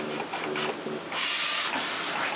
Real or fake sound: real